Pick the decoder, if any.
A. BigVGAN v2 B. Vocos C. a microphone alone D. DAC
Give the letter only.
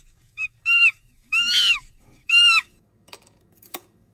D